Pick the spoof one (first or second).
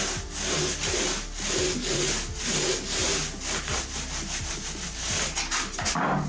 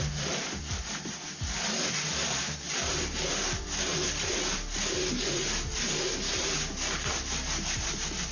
second